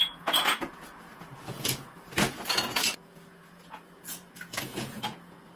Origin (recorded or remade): remade